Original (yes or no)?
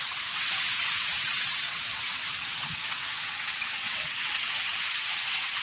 no